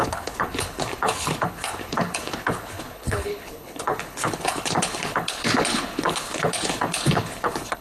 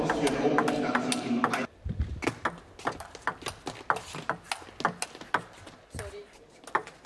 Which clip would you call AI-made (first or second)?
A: first